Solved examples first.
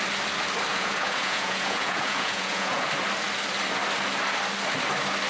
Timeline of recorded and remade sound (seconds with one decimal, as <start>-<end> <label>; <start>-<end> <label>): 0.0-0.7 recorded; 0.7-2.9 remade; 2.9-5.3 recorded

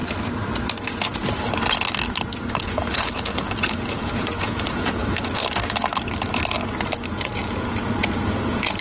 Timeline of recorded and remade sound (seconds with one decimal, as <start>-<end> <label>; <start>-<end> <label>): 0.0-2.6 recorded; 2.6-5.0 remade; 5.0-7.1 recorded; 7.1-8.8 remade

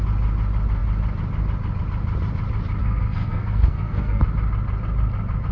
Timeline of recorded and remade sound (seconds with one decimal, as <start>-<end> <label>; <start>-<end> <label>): 0.0-2.8 recorded; 2.8-4.2 remade; 4.2-5.5 recorded

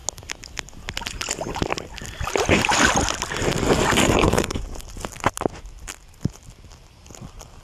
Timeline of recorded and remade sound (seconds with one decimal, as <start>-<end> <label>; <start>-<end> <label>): 0.0-4.0 recorded; 4.0-4.6 remade; 4.6-7.6 recorded

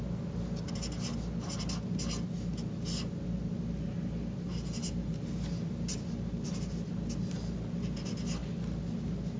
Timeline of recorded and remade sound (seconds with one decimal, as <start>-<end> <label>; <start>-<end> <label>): 0.0-9.4 recorded

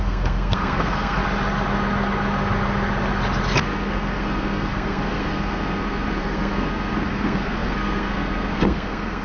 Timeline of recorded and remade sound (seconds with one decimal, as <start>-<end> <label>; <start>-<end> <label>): 0.0-1.2 remade; 1.2-3.6 recorded; 3.6-9.2 remade

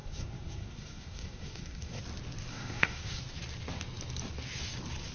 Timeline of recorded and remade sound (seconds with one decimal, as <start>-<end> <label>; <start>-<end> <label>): 0.0-2.0 remade; 2.0-2.5 recorded; 2.5-3.2 remade; 3.2-5.1 recorded